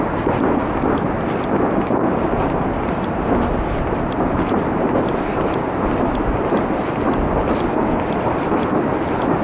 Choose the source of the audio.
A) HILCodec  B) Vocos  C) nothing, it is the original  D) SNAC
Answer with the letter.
C